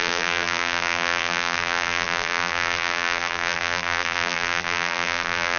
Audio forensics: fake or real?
fake